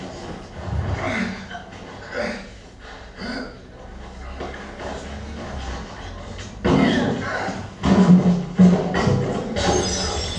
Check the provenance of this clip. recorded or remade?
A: recorded